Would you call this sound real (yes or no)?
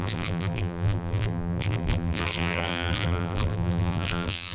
no